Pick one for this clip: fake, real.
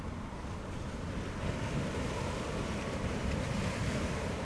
real